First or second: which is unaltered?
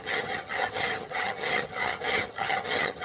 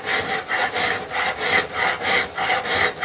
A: second